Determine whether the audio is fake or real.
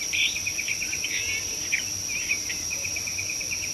fake